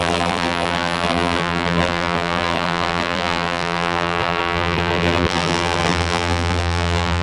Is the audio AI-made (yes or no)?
yes